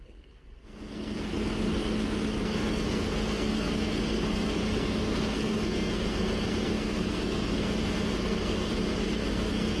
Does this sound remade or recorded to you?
remade